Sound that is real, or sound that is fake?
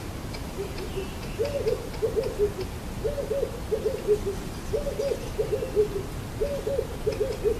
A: real